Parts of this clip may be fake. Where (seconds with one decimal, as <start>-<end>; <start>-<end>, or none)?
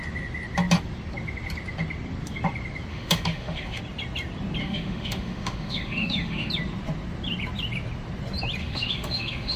2.9-3.8; 4.6-6.5; 8.6-9.6